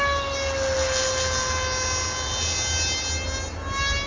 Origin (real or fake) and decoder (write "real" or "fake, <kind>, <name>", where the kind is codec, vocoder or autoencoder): real